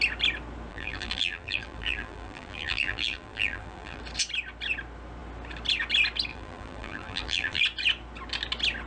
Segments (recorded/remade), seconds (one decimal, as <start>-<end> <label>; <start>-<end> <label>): 0.0-0.7 recorded; 0.7-4.0 remade; 4.0-6.3 recorded; 6.3-7.6 remade; 7.6-8.9 recorded